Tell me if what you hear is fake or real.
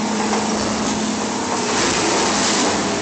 real